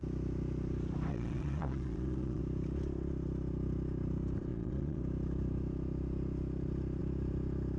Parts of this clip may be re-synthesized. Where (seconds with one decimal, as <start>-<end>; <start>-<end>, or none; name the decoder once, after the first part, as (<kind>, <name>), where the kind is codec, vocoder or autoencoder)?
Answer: 1.1-2.4 (vocoder, Vocos); 4.5-5.0